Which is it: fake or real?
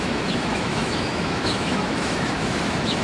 fake